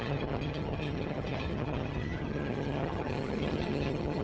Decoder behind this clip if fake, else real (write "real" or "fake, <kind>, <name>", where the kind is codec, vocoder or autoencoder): fake, vocoder, HiFi-GAN